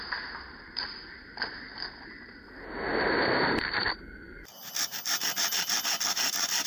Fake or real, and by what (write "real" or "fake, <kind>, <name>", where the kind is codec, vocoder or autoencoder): real